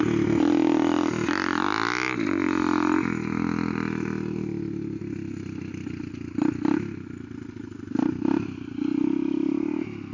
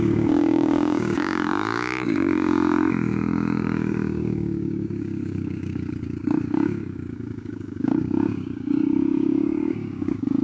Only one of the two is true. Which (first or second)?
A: first